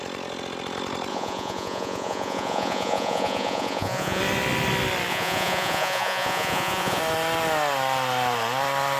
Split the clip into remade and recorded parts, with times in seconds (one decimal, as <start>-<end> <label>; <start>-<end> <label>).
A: 0.0-1.1 recorded; 1.1-4.2 remade; 4.2-5.1 recorded; 5.1-7.0 remade; 7.0-9.0 recorded